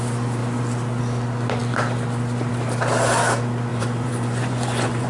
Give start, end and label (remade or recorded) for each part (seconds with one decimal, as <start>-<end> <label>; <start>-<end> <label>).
0.0-3.7 recorded; 3.7-5.1 remade